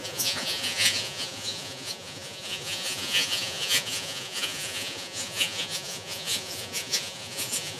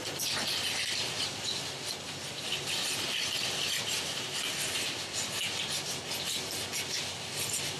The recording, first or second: second